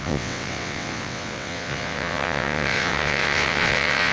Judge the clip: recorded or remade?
remade